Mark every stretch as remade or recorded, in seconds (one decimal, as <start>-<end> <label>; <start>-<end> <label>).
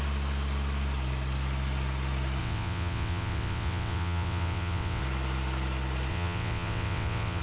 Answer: 0.0-2.4 recorded; 2.4-5.0 remade; 5.0-6.1 recorded; 6.1-7.4 remade